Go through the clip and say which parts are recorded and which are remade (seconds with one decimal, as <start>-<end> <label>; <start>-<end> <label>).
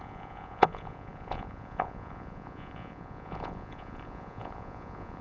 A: 0.0-5.2 remade